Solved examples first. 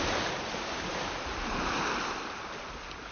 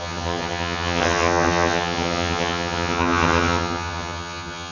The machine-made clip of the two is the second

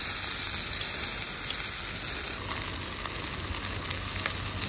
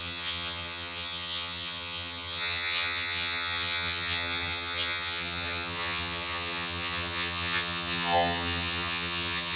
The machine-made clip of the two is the second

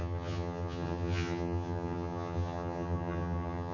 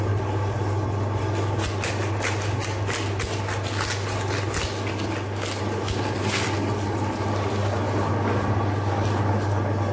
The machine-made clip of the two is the first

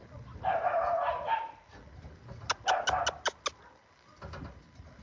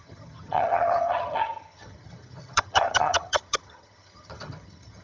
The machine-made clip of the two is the second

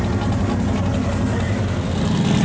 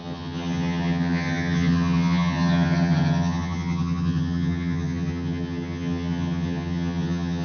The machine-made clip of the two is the second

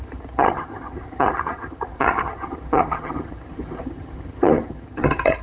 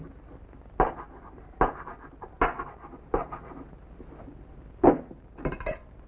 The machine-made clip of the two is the first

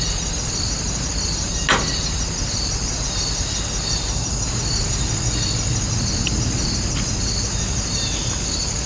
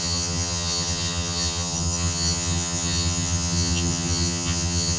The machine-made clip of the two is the second